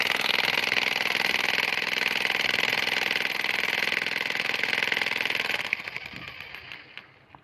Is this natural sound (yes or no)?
yes